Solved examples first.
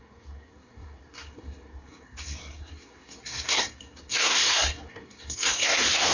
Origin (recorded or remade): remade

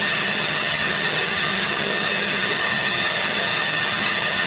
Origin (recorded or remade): remade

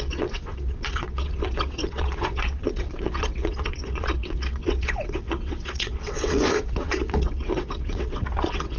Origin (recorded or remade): remade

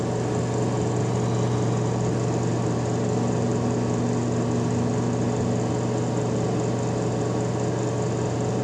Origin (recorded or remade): recorded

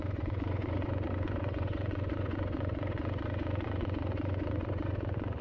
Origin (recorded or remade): remade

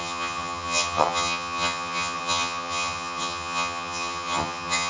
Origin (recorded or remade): remade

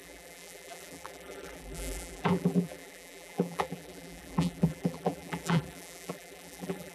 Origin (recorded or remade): remade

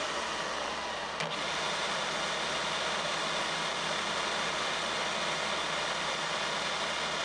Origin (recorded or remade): recorded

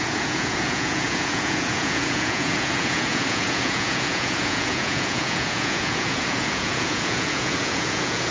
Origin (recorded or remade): remade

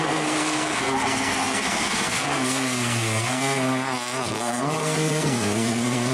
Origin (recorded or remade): remade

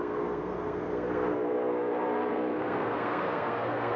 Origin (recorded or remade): remade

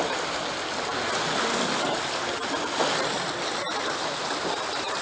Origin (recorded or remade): recorded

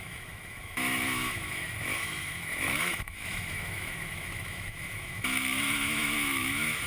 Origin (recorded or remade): remade